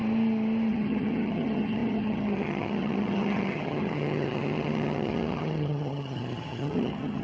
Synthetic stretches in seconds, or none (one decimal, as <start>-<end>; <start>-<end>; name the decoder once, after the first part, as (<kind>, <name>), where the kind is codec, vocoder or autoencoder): 0.7-7.2 (vocoder, HiFi-GAN)